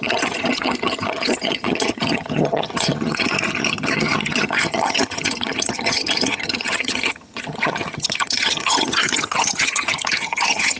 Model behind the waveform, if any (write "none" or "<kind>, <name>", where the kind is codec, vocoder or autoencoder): vocoder, HiFi-GAN